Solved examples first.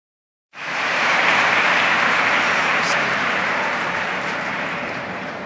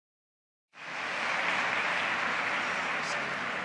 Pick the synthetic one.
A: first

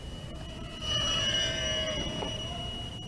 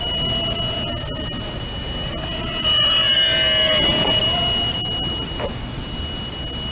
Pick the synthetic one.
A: first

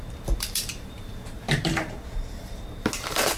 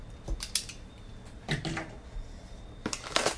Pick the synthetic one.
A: first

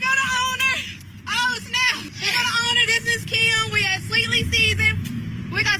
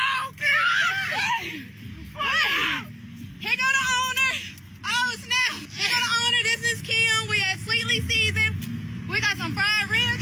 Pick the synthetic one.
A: first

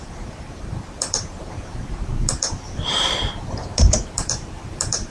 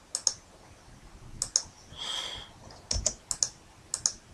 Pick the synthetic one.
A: first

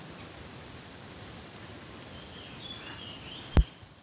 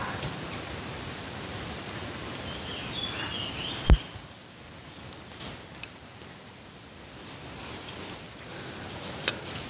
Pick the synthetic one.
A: first